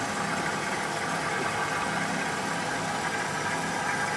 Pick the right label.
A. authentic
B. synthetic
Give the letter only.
A